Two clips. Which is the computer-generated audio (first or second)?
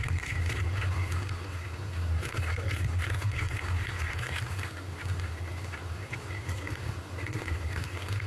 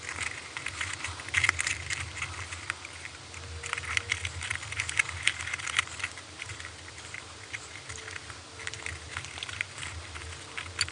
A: first